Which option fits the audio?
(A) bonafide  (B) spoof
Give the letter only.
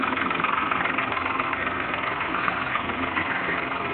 B